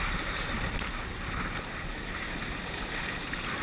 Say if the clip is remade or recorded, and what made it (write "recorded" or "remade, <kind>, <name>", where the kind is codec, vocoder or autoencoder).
recorded